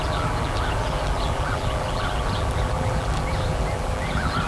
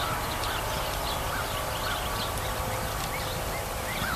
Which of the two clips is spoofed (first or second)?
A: first